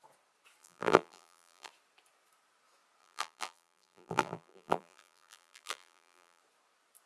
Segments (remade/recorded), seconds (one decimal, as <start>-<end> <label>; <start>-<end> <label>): 0.0-0.6 recorded; 0.6-1.7 remade; 1.7-3.0 recorded; 3.0-6.4 remade; 6.4-7.1 recorded